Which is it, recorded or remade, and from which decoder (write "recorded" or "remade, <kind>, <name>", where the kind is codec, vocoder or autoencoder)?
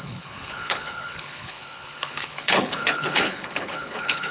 remade, codec, HILCodec